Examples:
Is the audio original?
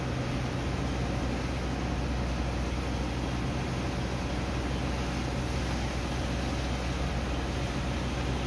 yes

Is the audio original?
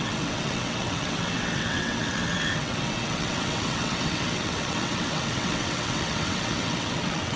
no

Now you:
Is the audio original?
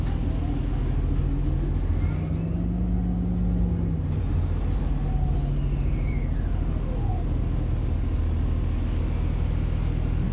yes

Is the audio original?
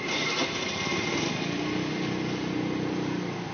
yes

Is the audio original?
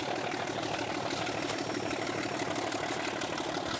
yes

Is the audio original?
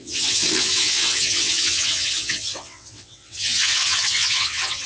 no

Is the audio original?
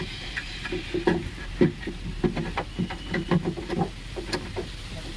yes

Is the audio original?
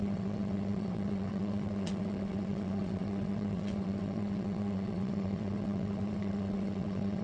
no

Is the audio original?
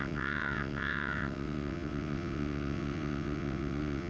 no